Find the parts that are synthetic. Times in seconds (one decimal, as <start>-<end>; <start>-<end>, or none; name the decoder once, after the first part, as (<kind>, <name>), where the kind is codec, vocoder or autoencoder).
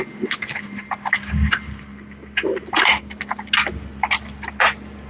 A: none